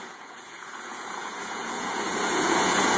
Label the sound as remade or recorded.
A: remade